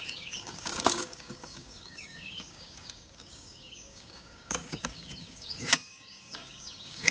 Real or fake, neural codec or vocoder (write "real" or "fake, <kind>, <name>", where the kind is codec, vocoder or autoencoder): fake, codec, DAC